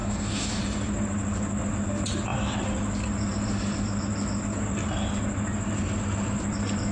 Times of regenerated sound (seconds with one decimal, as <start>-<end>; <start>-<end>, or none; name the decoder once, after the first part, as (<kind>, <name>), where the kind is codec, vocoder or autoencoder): 0.0-0.6 (codec, DAC)